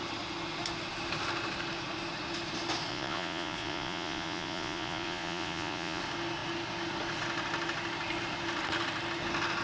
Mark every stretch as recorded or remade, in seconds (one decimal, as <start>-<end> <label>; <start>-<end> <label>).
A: 0.0-2.9 recorded; 2.9-6.0 remade; 6.0-9.6 recorded